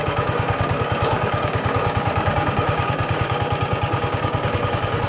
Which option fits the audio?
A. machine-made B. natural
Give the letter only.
A